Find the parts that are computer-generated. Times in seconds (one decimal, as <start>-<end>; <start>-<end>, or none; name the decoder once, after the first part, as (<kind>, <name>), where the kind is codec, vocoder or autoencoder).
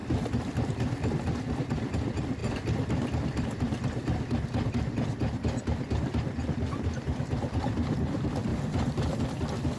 8.5-9.3 (vocoder, BigVGAN v2)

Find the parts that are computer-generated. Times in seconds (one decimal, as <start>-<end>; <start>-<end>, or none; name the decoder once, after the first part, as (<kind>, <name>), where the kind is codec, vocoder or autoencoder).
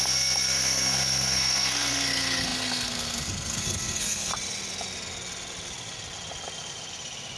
0.0-4.3 (codec, SNAC)